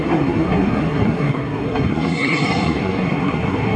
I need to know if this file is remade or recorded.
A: remade